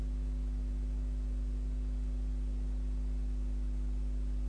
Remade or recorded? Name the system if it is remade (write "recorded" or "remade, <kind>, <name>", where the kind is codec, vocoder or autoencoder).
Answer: recorded